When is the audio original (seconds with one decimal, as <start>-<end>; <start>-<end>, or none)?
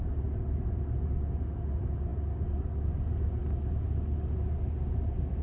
0.0-5.4